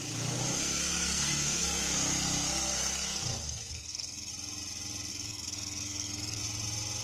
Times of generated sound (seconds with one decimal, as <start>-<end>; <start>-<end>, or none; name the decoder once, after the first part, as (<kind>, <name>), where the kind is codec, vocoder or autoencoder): 0.5-4.3 (codec, SNAC); 5.1-6.4